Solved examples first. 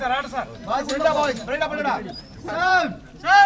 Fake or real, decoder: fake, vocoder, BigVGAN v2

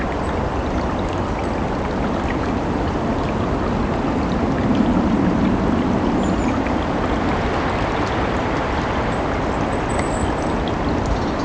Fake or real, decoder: real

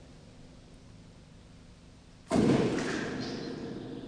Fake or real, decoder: real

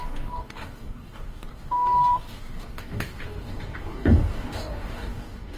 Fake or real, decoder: fake, codec, DAC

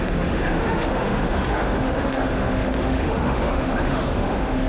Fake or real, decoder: fake, autoencoder, DAC-VAE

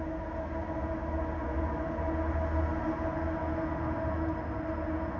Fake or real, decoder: real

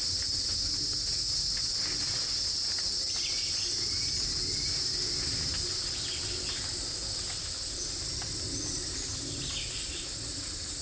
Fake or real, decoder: real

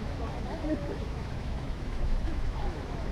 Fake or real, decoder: fake, autoencoder, DAC-VAE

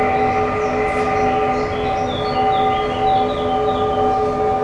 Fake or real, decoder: real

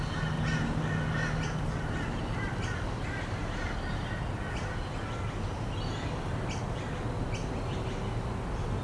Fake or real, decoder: real